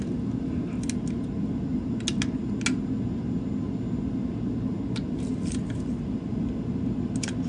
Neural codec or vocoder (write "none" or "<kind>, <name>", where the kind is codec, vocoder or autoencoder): none